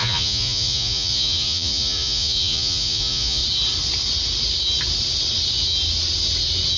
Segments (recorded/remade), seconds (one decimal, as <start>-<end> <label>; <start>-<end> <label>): 0.0-3.4 remade; 3.4-6.8 recorded